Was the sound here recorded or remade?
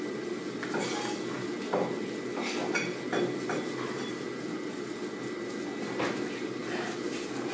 recorded